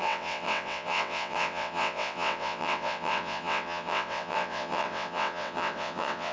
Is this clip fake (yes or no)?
yes